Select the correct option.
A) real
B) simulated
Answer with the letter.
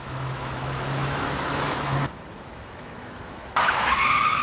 B